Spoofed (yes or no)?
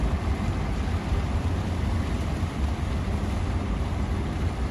no